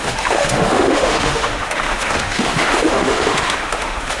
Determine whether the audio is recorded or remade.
remade